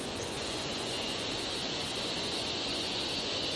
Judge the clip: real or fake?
fake